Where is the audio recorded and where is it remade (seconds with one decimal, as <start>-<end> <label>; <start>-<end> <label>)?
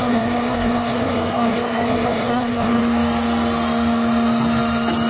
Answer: 0.0-2.8 remade; 2.8-5.1 recorded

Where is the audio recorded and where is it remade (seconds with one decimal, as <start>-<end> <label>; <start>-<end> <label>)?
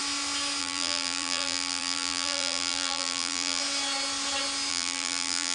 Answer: 0.0-0.6 recorded; 0.6-3.6 remade; 3.6-4.7 recorded; 4.7-5.5 remade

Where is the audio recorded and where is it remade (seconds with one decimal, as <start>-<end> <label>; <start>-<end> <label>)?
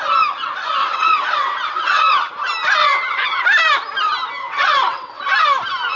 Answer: 0.0-0.8 recorded; 0.8-2.3 remade; 2.3-2.8 recorded; 2.8-3.4 remade; 3.4-4.4 recorded; 4.4-5.2 remade; 5.2-6.0 recorded